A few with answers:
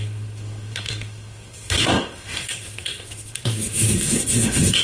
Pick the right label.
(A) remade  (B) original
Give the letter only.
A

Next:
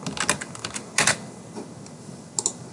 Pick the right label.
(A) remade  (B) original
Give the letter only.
B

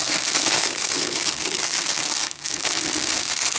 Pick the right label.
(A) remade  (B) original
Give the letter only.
A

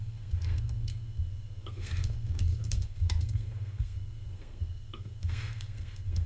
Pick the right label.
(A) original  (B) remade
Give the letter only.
B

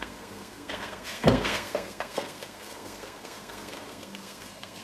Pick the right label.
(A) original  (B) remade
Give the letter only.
B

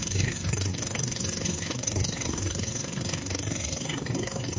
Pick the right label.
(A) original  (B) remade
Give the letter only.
B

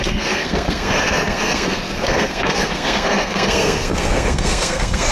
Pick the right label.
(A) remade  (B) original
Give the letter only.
A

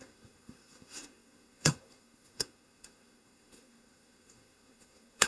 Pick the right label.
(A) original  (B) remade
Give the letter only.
B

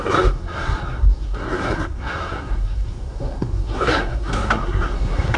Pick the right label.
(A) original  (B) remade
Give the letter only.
B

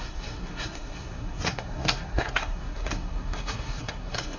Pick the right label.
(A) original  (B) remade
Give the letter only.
B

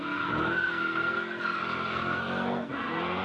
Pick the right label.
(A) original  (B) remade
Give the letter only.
B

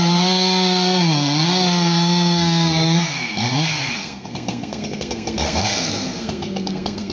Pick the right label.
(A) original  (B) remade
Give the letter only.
B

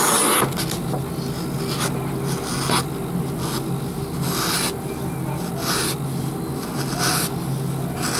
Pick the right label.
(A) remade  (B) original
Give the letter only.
B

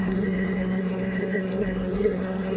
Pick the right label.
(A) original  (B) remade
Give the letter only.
B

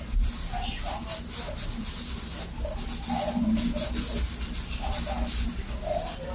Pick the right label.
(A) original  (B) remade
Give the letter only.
A